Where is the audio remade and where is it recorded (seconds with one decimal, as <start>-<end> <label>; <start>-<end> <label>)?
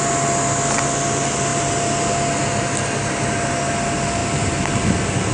0.0-5.3 recorded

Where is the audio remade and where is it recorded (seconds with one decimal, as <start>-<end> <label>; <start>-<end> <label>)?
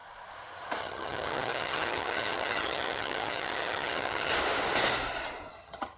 0.0-0.8 recorded; 0.8-4.3 remade; 4.3-5.5 recorded; 5.5-6.0 remade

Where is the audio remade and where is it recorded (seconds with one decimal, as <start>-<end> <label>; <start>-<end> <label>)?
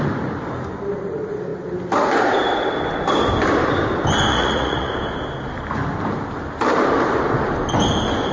0.0-4.3 recorded; 4.3-4.9 remade; 4.9-8.3 recorded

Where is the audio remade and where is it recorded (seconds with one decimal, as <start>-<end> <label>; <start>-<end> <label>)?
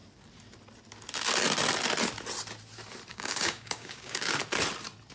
0.0-3.1 recorded; 3.1-4.4 remade; 4.4-5.1 recorded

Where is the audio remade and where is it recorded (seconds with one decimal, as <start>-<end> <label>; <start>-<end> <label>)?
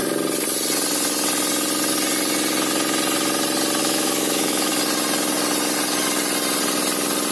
0.0-3.8 recorded; 3.8-4.7 remade; 4.7-7.3 recorded